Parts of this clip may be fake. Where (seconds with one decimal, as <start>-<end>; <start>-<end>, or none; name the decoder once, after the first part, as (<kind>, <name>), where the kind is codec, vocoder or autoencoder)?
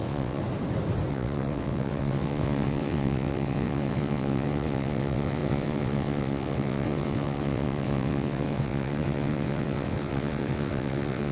0.0-0.4 (vocoder, WaveNeXt); 1.1-11.3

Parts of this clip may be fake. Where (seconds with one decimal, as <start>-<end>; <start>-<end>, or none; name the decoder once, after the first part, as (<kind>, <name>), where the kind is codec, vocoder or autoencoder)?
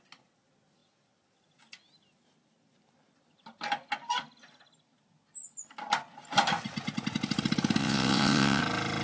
7.8-8.6 (vocoder, WaveNeXt)